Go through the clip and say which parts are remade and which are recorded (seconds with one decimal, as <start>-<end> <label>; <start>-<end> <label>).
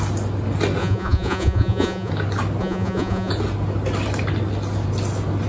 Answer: 0.0-0.8 recorded; 0.8-2.1 remade; 2.1-2.6 recorded; 2.6-3.3 remade; 3.3-5.5 recorded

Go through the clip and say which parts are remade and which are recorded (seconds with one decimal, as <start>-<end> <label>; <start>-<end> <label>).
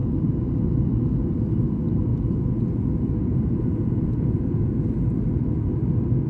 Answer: 0.0-2.1 recorded; 2.1-4.8 remade; 4.8-6.3 recorded